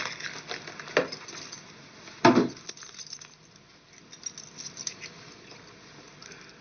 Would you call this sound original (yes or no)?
yes